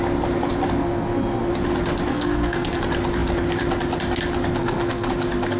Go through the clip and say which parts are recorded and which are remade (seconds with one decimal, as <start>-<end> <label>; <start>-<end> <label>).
0.0-0.8 recorded; 0.8-1.5 remade; 1.5-2.1 recorded; 2.1-2.8 remade; 2.8-4.6 recorded; 4.6-5.1 remade; 5.1-5.6 recorded